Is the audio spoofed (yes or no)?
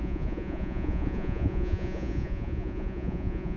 yes